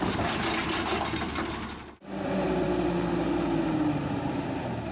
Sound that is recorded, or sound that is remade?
recorded